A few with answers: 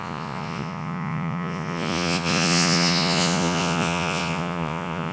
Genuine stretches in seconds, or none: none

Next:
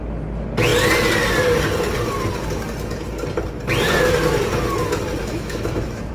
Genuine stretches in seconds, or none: 0.0-5.2

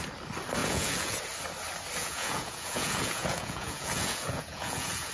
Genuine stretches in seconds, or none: 0.0-0.6; 1.2-2.0

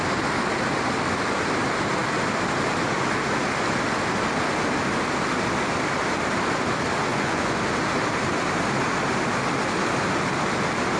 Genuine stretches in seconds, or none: 0.0-7.1; 7.6-11.0

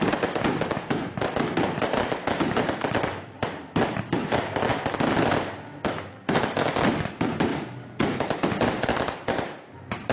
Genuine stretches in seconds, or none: 0.0-7.5; 9.0-10.1

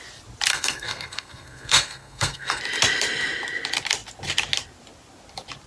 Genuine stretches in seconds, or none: 0.0-0.5; 2.6-5.7

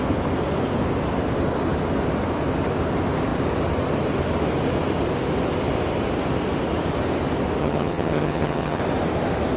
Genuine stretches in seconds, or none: 0.0-7.6; 8.8-9.6